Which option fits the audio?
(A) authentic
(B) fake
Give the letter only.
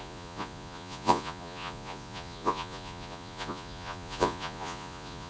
B